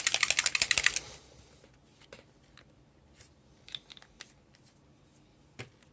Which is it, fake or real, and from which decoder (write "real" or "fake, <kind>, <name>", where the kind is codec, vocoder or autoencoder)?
real